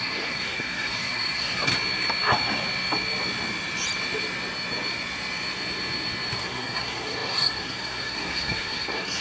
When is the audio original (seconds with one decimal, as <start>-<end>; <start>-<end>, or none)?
1.7-6.4